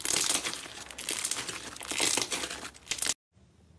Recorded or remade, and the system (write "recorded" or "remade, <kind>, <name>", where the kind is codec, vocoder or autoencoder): recorded